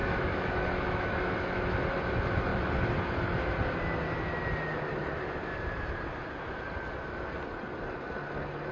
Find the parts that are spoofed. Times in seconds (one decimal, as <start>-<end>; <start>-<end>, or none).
0.0-1.7